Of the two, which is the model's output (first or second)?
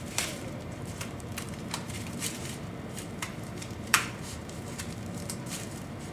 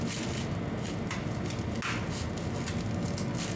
first